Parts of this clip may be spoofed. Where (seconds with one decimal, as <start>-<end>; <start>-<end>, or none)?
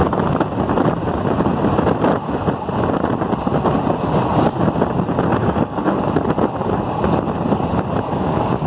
5.4-6.1; 8.1-8.7